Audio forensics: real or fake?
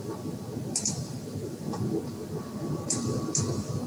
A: real